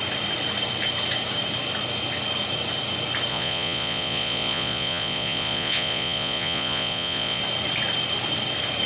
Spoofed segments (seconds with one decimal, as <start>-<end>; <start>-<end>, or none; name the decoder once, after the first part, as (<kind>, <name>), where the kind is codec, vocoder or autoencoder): 3.3-7.4 (vocoder, Vocos)